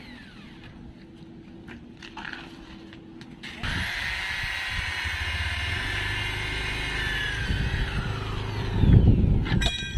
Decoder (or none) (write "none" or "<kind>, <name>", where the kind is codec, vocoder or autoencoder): none